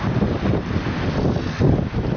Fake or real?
real